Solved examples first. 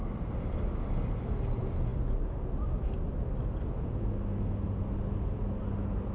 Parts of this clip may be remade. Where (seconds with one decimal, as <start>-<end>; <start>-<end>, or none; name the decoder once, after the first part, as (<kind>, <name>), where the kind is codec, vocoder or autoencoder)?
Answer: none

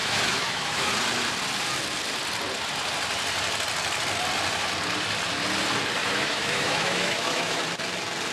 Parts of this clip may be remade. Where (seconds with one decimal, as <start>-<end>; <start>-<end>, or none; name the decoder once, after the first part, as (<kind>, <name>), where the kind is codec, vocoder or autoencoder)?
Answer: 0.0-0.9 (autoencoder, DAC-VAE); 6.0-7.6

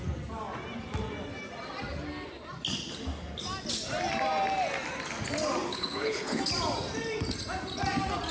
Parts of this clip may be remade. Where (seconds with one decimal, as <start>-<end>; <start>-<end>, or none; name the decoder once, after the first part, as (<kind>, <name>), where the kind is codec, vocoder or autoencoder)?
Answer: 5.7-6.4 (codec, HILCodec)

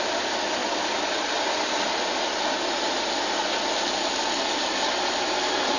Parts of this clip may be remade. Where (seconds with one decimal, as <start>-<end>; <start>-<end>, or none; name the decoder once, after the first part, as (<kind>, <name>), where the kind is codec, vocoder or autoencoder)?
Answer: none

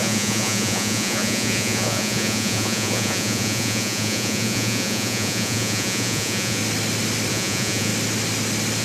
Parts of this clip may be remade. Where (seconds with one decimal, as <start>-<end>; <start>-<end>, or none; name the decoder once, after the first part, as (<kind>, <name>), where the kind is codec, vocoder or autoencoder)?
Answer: 0.0-6.6 (vocoder, Vocos); 7.3-7.9

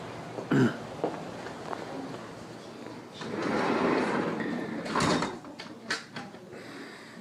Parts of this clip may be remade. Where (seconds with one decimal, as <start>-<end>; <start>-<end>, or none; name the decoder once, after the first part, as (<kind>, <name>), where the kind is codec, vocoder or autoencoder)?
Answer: 3.4-4.3 (vocoder, BigVGAN v2); 5.1-6.6

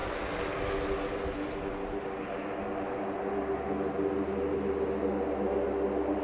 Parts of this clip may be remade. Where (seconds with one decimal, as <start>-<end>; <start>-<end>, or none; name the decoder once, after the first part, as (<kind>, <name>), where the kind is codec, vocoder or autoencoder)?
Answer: none